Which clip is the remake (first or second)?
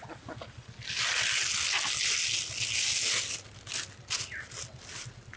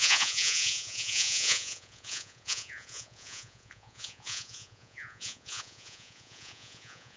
second